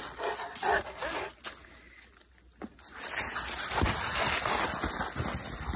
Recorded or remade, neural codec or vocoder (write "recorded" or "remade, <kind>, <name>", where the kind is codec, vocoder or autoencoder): recorded